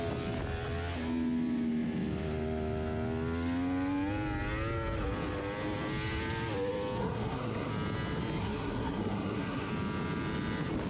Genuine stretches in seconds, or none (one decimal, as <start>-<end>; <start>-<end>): 0.0-7.0; 7.7-8.4; 9.7-10.9